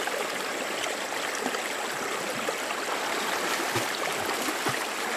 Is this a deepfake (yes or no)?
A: no